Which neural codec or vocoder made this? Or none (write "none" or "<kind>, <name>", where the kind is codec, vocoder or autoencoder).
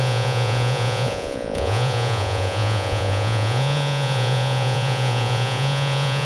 vocoder, Vocos